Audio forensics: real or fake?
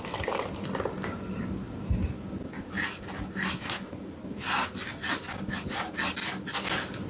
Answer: real